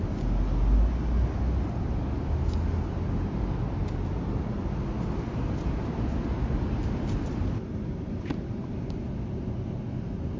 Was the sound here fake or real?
real